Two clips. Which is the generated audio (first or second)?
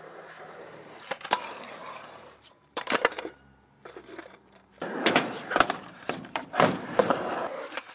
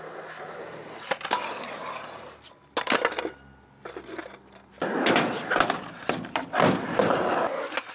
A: first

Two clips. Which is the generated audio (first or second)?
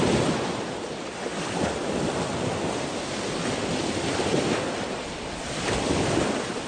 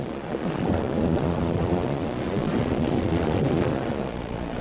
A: second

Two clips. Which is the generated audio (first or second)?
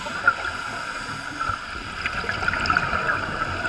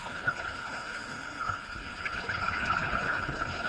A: second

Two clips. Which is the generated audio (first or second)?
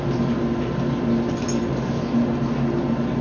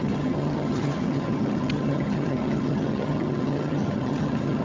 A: second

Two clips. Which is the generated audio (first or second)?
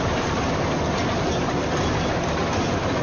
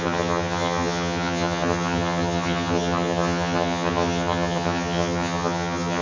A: second